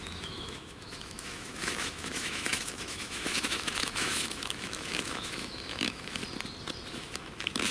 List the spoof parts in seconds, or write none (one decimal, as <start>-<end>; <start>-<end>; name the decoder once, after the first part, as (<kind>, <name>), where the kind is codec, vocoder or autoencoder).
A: 0.0-6.2 (autoencoder, DAC-VAE); 6.9-7.7